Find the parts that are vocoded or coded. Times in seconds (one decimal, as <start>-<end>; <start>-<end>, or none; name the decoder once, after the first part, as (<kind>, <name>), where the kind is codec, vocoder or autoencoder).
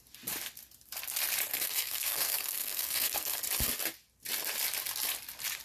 1.5-3.4 (codec, SNAC)